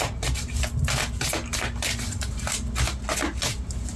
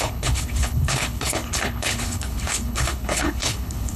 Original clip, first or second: first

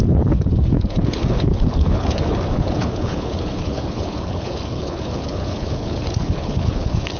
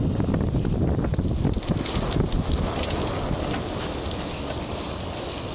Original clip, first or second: second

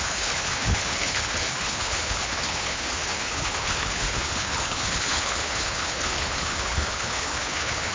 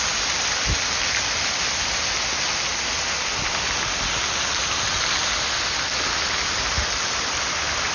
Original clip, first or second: second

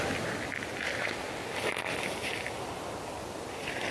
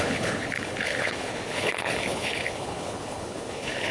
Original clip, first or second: first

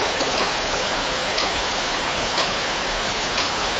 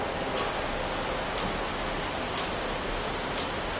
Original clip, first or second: second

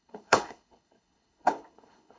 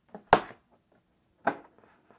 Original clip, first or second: second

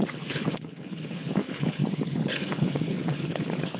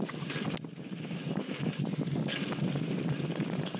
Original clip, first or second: second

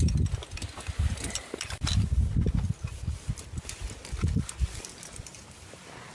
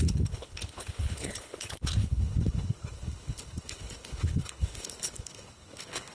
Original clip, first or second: first